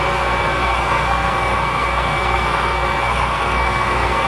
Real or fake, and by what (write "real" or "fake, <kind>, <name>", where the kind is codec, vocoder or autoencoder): fake, codec, SNAC